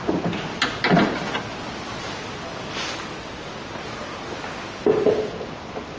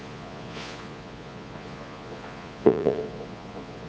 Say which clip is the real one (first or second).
first